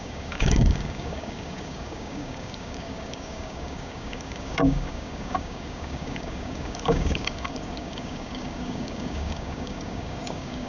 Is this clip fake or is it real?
fake